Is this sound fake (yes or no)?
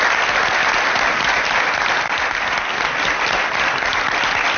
no